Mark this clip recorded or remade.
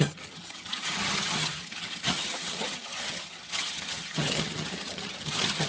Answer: remade